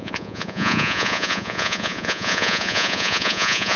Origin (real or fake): fake